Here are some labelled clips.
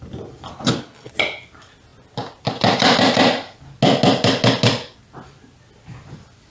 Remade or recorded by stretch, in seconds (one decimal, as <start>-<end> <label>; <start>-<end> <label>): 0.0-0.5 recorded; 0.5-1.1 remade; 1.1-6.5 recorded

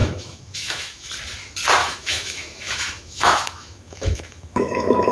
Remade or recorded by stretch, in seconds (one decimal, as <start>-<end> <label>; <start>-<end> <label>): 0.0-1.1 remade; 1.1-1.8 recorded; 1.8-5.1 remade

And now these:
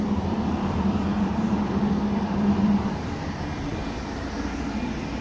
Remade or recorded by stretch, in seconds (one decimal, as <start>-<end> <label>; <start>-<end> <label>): 0.0-5.2 remade